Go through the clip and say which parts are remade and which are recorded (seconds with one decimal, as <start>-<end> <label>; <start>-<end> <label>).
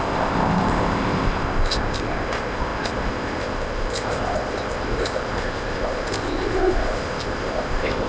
0.0-8.1 remade